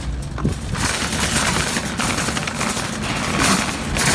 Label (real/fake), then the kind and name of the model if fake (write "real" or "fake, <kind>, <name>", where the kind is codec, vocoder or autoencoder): real